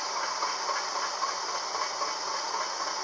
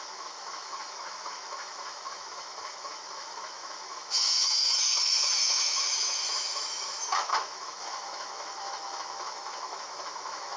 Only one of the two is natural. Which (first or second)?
first